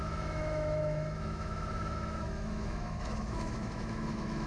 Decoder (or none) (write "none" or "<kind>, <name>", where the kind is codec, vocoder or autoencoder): autoencoder, DAC-VAE